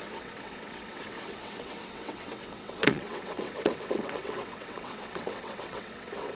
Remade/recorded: remade